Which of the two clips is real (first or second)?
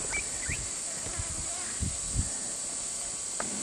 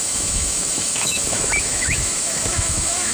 first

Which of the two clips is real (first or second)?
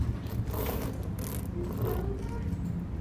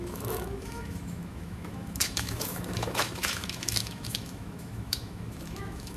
first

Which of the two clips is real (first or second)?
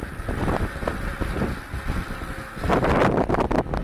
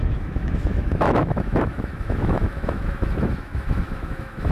first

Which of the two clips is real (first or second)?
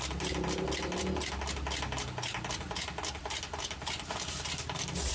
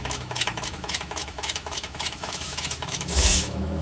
first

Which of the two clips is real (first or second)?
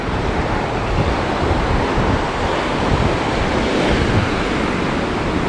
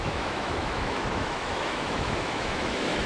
first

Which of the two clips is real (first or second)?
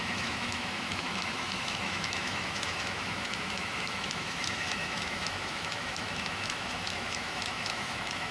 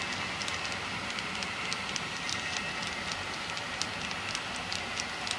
second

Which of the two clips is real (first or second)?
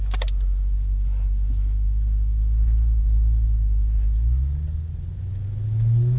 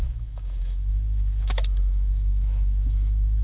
first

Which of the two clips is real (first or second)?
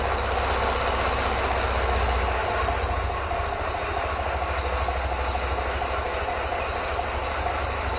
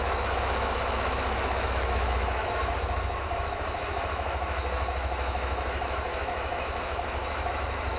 first